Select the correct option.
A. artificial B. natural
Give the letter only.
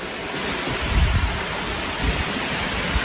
B